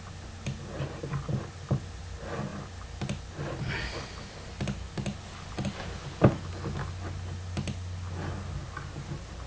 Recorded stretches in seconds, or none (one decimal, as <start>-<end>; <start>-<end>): 0.0-9.5